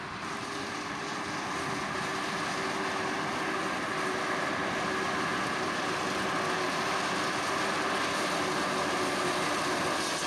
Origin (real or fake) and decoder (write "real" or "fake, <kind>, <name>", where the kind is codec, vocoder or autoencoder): real